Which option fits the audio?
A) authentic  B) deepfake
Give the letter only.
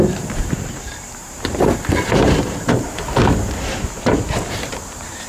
B